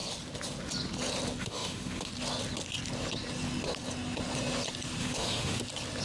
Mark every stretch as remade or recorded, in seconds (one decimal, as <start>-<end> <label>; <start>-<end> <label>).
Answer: 0.0-1.4 recorded; 1.4-2.1 remade; 2.1-5.0 recorded; 5.0-5.6 remade; 5.6-6.0 recorded